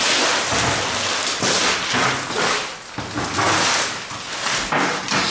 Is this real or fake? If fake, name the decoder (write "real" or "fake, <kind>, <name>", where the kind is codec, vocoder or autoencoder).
real